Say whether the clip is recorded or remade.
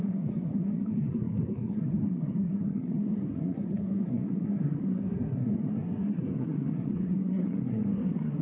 remade